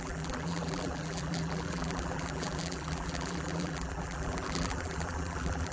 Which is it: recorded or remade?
remade